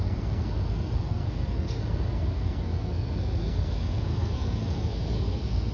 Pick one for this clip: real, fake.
fake